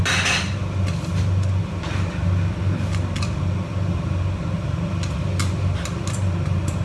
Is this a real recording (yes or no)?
yes